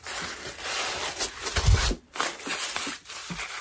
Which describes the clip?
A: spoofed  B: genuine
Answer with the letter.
B